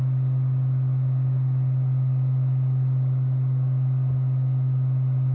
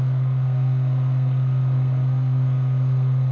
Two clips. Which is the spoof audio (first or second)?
second